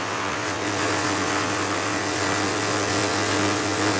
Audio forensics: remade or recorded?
remade